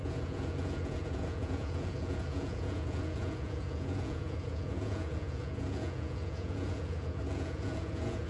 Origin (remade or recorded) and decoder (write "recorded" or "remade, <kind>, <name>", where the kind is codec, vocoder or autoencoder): remade, vocoder, Vocos